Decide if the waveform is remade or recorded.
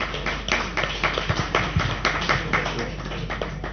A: recorded